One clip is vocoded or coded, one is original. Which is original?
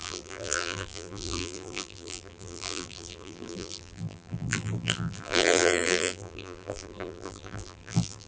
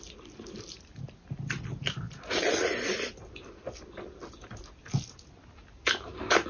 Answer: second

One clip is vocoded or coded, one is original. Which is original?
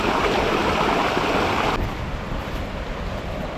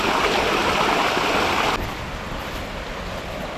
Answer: second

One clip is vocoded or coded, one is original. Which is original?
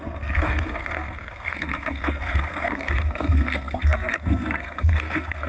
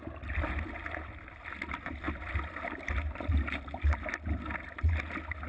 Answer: second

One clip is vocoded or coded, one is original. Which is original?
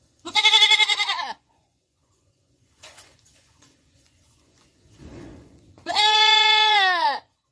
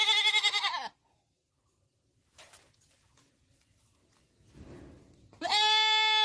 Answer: second